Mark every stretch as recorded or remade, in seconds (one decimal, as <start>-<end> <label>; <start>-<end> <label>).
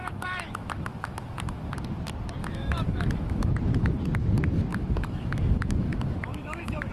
0.0-1.7 remade; 1.7-2.4 recorded; 2.4-3.5 remade; 3.5-4.7 recorded; 4.7-6.9 remade